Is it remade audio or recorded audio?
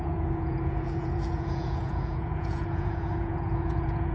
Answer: remade